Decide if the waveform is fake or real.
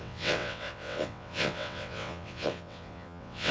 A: fake